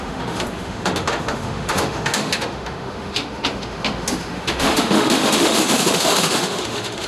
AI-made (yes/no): yes